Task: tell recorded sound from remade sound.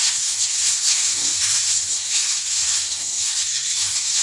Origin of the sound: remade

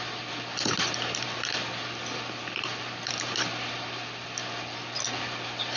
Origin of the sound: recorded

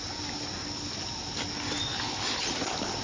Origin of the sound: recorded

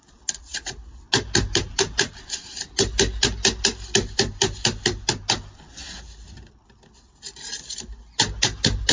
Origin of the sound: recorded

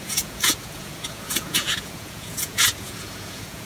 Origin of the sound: remade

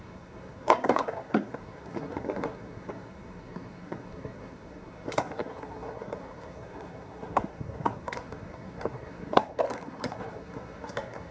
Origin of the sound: remade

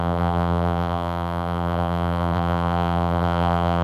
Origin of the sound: remade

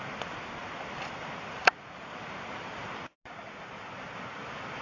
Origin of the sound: recorded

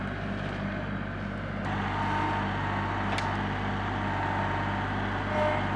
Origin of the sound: recorded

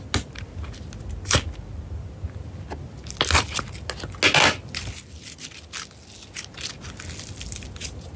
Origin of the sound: recorded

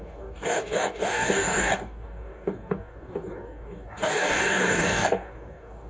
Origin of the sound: remade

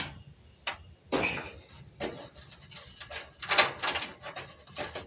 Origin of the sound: recorded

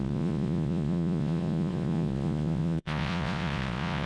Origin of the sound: remade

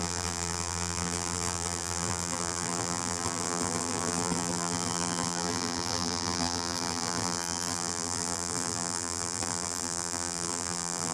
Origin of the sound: remade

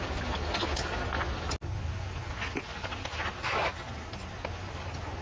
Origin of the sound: recorded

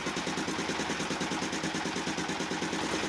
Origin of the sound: recorded